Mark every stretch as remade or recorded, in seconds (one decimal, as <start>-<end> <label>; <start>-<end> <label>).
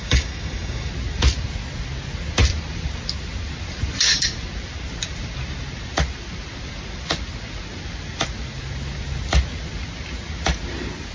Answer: 0.0-0.9 remade; 0.9-11.1 recorded